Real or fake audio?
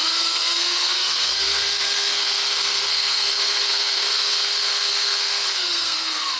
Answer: fake